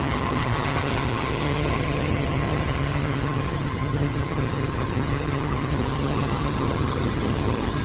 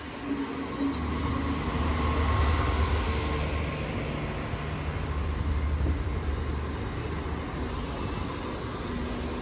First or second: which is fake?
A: first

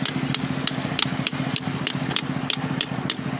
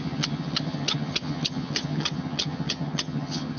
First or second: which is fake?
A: second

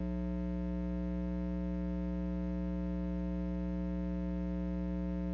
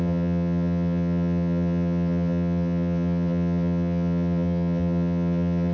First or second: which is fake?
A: second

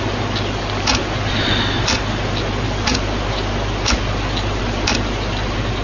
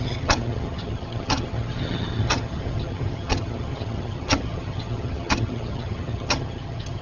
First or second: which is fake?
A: second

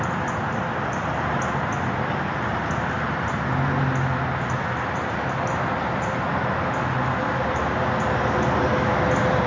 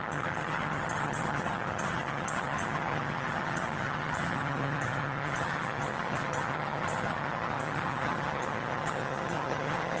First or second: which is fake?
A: second